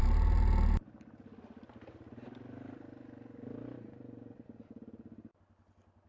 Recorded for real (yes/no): yes